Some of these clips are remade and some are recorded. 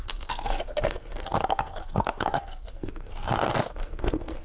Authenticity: remade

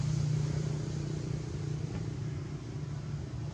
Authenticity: recorded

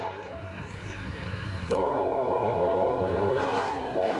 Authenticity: remade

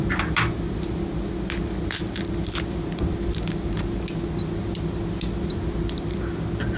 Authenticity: recorded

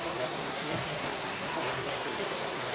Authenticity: remade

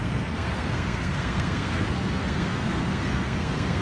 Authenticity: remade